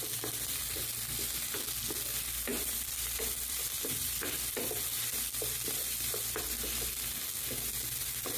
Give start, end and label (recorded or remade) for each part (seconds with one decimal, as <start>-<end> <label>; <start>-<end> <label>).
0.0-2.5 recorded; 2.5-7.0 remade; 7.0-8.4 recorded